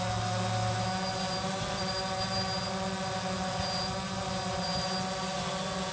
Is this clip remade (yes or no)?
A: no